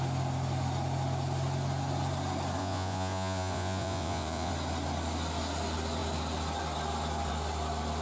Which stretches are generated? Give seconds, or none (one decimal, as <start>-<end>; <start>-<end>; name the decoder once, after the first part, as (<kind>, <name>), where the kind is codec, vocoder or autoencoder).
2.6-4.5 (vocoder, Vocos)